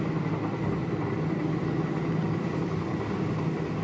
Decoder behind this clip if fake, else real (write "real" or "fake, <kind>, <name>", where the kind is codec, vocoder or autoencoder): real